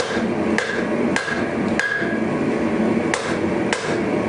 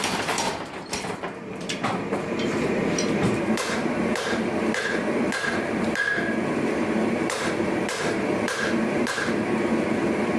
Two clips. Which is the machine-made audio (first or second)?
second